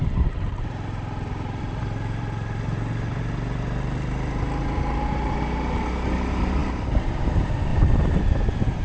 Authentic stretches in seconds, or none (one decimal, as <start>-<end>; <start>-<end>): 4.6-7.7; 8.2-8.8